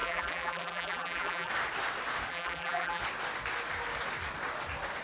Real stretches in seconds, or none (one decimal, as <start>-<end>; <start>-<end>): 1.5-2.3; 3.0-5.0